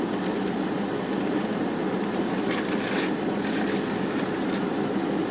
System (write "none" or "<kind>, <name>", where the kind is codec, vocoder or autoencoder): none